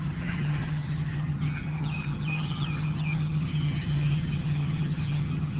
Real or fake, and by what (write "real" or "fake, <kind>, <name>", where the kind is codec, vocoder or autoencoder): fake, vocoder, HiFi-GAN